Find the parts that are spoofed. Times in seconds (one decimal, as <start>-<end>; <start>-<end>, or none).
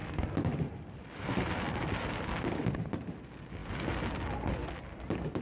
0.0-2.7; 3.6-5.4